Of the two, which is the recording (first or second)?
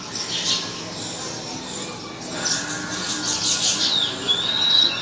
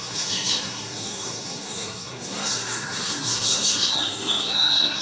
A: first